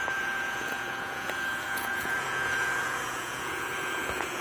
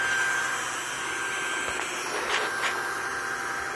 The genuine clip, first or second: second